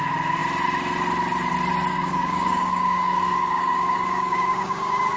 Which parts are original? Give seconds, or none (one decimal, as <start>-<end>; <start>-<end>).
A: 0.0-1.9